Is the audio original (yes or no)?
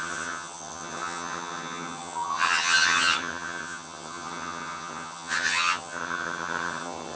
no